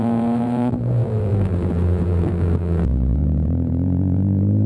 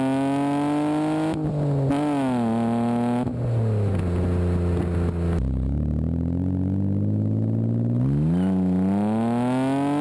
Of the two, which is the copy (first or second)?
first